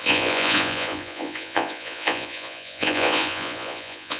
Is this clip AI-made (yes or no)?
yes